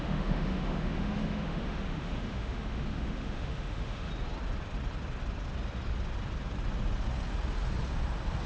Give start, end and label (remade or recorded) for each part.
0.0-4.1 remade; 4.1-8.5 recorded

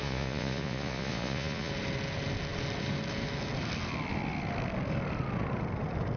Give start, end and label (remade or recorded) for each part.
0.0-1.7 remade; 1.7-6.2 recorded

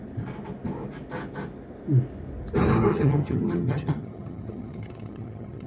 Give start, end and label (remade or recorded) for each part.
0.0-2.9 recorded; 2.9-5.7 remade